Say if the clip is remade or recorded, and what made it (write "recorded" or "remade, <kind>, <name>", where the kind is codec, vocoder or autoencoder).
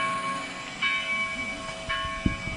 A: recorded